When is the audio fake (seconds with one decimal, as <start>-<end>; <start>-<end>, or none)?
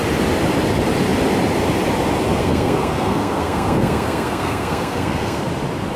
2.4-5.5